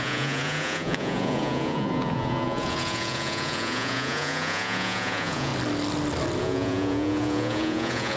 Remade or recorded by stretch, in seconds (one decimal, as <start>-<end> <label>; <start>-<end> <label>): 0.0-5.5 remade; 5.5-6.4 recorded; 6.4-8.2 remade